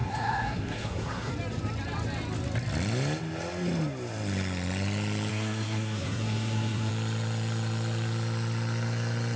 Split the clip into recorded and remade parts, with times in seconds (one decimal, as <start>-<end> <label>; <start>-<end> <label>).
0.0-1.3 remade; 1.3-5.3 recorded; 5.3-6.9 remade; 6.9-9.4 recorded